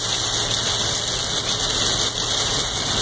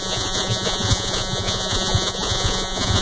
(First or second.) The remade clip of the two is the second